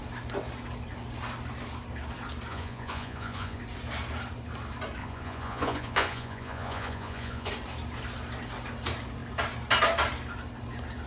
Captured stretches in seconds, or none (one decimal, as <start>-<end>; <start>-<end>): 0.0-2.5; 3.6-5.0; 7.5-11.1